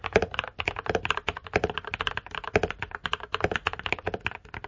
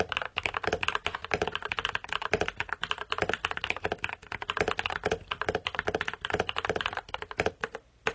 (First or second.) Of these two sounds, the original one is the second